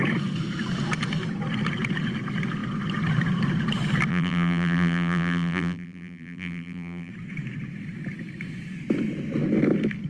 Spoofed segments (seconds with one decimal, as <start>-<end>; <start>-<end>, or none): 4.1-7.1